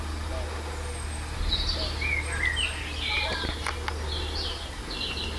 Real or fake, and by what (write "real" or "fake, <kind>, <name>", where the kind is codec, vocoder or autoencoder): real